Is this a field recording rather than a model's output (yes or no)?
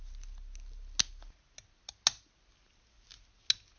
yes